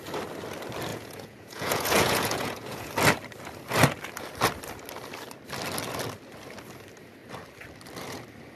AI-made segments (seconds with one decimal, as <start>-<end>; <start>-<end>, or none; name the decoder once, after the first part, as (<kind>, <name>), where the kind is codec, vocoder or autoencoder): 0.9-2.9 (vocoder, Vocos)